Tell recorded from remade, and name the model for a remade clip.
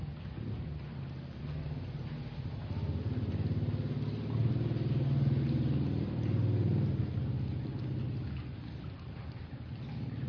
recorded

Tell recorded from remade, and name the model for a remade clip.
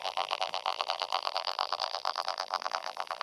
remade, vocoder, BigVGAN v2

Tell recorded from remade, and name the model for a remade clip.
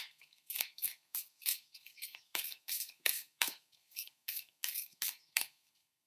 remade, codec, SNAC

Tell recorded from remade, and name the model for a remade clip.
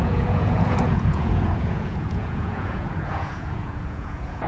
remade, vocoder, Vocos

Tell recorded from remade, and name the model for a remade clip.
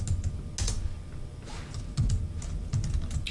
recorded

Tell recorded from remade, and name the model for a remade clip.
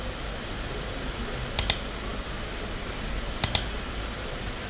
recorded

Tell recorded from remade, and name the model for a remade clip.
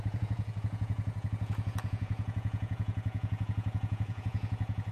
remade, vocoder, Vocos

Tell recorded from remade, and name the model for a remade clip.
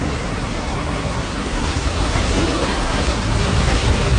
remade, codec, SNAC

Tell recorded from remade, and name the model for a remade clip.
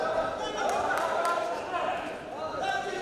recorded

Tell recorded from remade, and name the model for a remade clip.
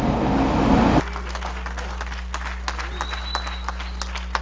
recorded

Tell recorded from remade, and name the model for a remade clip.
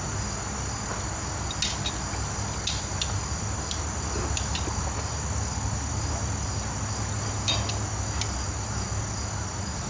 recorded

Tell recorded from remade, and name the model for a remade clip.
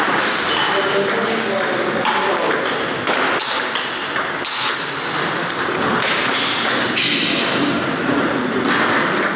recorded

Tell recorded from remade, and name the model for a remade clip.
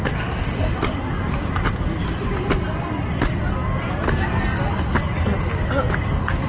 recorded